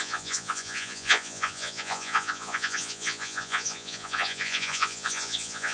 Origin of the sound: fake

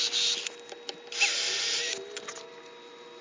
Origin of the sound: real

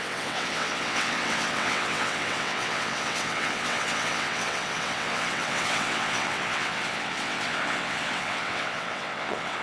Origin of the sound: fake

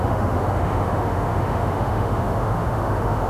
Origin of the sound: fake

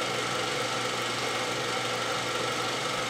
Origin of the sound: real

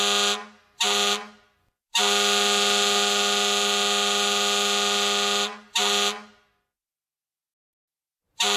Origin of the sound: real